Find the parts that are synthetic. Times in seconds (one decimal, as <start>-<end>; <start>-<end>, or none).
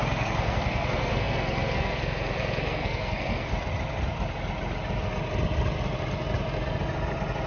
0.0-3.5